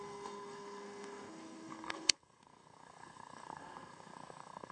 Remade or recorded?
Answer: remade